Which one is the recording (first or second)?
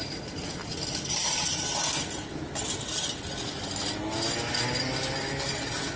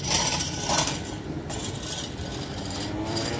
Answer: first